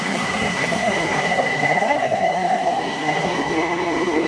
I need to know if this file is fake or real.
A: fake